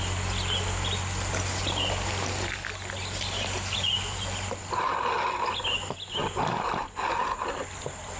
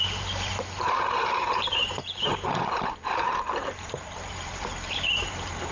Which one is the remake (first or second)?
second